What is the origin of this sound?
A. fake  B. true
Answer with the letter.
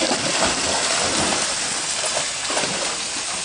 B